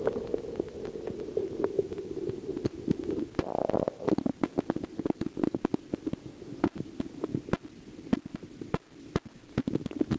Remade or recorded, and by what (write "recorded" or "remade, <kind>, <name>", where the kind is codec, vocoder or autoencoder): recorded